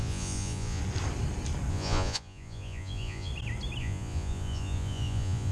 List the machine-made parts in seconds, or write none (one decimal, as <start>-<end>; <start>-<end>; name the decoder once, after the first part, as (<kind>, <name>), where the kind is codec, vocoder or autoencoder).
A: 0.0-0.8 (vocoder, Vocos); 1.7-3.3; 3.8-5.5